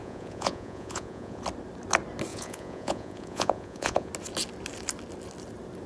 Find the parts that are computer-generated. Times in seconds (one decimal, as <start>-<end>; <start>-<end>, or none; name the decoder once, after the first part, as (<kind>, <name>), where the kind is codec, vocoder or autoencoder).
0.0-1.4 (vocoder, Vocos); 2.3-4.1